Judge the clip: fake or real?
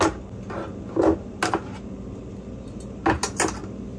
real